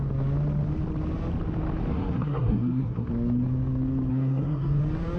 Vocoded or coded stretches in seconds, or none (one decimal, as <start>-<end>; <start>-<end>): 1.9-3.1; 4.1-4.8